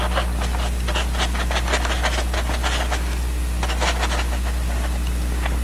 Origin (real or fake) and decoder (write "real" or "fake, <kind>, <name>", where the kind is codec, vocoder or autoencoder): real